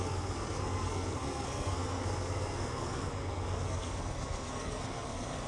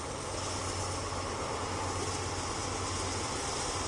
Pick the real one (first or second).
second